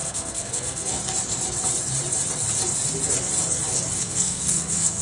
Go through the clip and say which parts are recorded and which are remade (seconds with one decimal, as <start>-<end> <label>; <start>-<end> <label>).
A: 0.0-1.0 remade; 1.0-4.0 recorded; 4.0-5.0 remade